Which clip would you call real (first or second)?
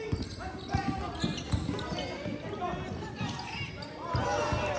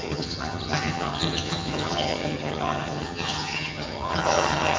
first